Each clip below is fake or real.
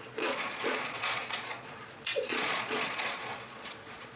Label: fake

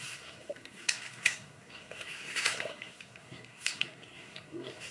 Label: fake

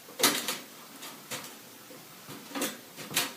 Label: fake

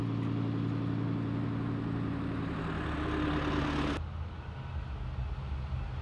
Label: real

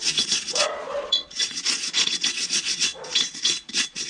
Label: fake